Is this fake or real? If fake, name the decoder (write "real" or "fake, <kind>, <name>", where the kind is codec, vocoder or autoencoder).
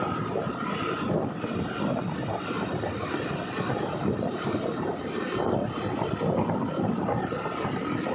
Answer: real